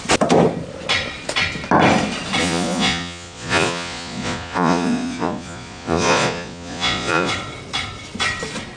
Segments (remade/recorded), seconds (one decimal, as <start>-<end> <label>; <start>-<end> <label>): 0.0-2.4 recorded; 2.4-7.3 remade; 7.3-8.8 recorded